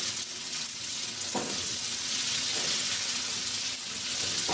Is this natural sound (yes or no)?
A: no